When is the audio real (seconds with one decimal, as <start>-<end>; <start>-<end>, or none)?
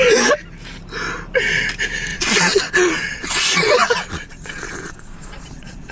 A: 0.0-2.1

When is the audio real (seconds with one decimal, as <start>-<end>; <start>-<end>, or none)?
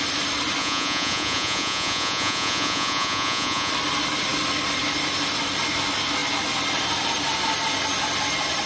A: 0.0-0.6; 3.7-8.7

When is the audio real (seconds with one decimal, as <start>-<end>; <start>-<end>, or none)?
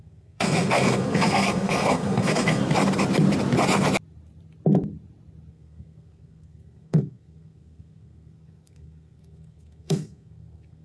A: 2.6-5.5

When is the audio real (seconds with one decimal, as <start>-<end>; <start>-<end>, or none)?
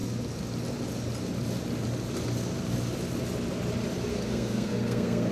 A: 0.0-4.1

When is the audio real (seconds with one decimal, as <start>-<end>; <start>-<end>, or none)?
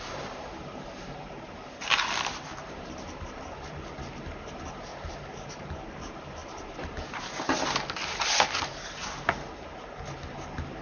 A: 0.0-0.6; 4.0-4.9; 5.5-6.4; 7.2-10.8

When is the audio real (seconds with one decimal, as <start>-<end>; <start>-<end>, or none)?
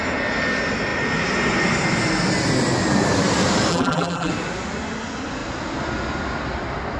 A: 0.0-3.7; 4.3-7.0